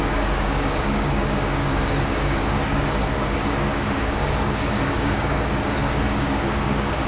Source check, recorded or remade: remade